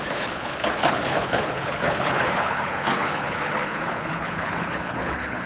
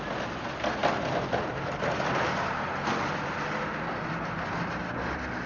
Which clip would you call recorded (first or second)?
second